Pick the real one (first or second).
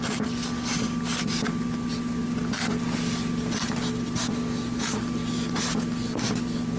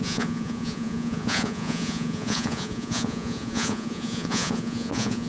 first